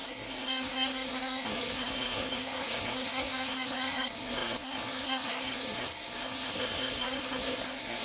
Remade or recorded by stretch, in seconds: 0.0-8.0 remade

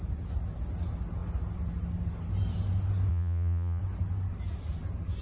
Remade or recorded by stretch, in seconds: 0.0-3.1 recorded; 3.1-3.8 remade; 3.8-5.2 recorded

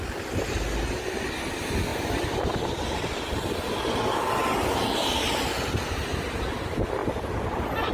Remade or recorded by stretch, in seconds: 0.0-7.0 recorded; 7.0-7.9 remade

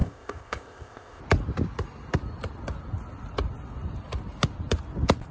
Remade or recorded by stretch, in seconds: 0.0-1.2 remade; 1.2-5.3 recorded

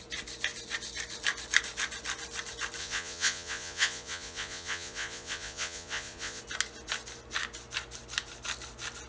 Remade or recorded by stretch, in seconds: 0.0-2.8 recorded; 2.8-6.4 remade; 6.4-9.1 recorded

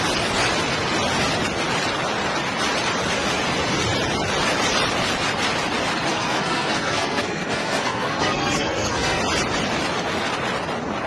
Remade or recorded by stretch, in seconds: 0.0-6.1 recorded; 6.1-9.2 remade; 9.2-11.1 recorded

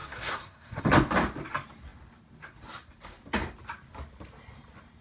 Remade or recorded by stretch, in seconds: 0.0-0.8 remade; 0.8-5.0 recorded